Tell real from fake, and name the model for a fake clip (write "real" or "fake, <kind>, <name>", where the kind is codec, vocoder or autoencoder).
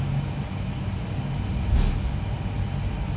real